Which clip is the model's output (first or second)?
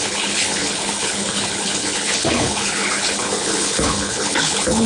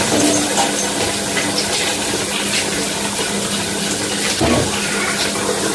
first